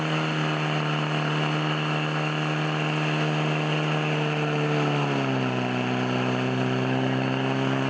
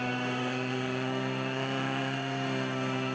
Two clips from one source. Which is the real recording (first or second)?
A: first